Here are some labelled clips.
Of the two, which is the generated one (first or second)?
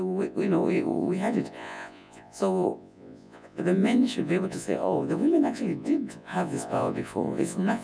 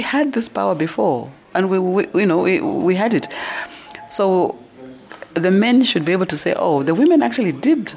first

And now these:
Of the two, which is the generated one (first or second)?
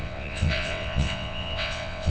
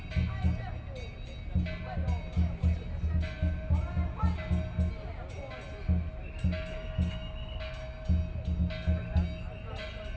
first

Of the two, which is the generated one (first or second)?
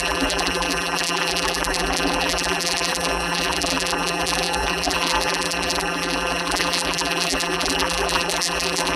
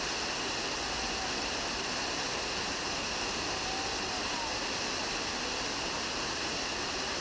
first